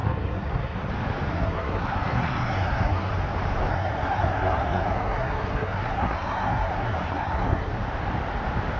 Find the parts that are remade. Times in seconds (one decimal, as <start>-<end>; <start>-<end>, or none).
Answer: 0.0-0.9; 1.3-3.1; 3.7-7.7